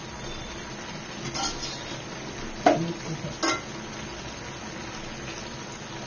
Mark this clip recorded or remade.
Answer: recorded